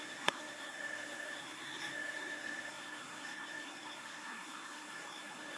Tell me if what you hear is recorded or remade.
remade